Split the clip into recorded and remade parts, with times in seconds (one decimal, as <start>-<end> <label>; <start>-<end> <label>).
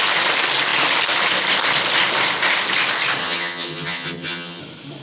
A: 0.0-3.2 recorded; 3.2-4.6 remade; 4.6-5.0 recorded